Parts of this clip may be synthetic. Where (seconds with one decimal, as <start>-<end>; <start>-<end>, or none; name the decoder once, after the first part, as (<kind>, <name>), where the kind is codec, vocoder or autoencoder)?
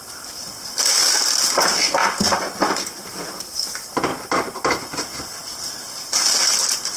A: 0.0-2.0 (vocoder, BigVGAN v2); 3.1-7.0